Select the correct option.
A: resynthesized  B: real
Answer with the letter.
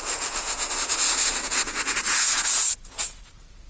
A